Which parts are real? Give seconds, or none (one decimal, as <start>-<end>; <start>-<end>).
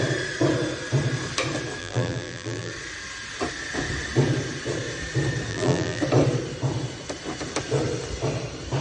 0.0-1.8; 2.7-5.5; 6.0-8.8